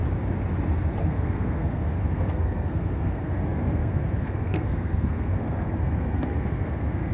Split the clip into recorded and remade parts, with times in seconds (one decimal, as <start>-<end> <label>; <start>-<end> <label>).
0.0-1.0 recorded; 1.0-7.1 remade